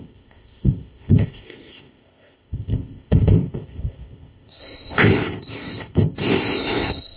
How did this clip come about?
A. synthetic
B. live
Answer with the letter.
A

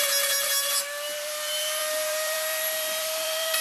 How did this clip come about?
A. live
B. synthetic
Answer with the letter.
B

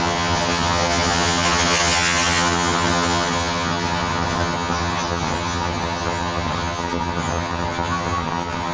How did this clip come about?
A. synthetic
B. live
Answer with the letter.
A